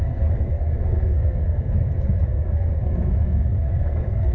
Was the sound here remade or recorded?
remade